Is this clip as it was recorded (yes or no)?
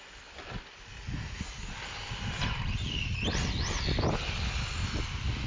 yes